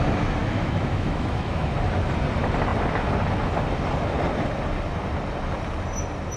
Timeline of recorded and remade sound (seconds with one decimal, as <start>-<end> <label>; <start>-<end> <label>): 0.0-0.4 recorded; 0.4-1.7 remade; 1.7-6.4 recorded